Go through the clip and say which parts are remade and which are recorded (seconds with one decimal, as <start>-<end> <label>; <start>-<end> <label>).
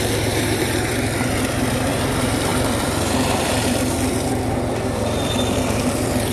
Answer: 0.0-6.3 remade